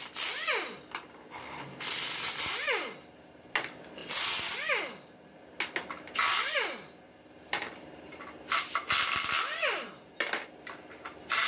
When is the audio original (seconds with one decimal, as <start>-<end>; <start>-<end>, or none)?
0.0-11.5